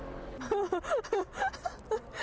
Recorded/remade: recorded